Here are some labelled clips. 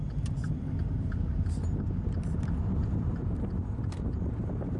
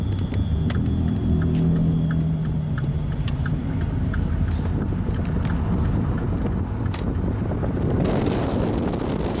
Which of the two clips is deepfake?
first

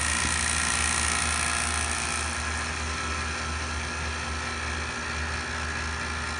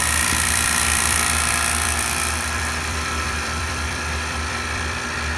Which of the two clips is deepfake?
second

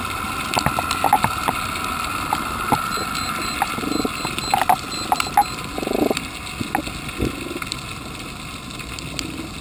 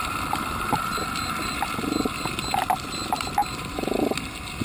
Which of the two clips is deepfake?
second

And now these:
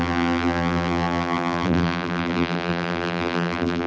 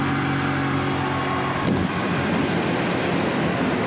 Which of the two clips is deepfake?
first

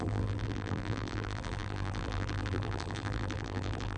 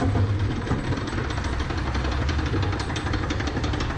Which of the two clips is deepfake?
first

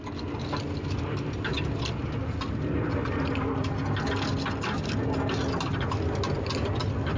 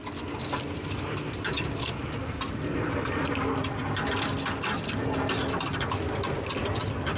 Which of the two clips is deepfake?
second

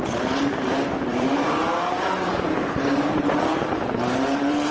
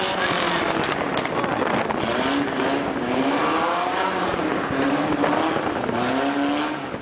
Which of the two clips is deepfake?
first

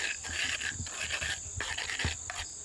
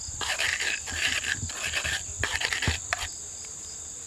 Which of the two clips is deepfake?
second